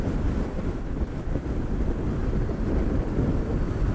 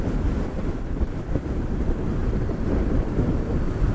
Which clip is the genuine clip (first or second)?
first